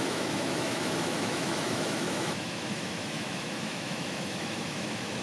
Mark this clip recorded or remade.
remade